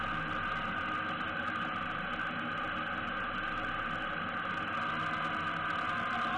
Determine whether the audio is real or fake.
real